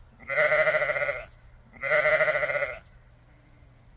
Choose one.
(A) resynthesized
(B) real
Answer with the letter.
B